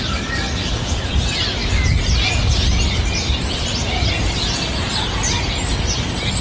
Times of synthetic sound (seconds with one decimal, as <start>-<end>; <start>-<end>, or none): none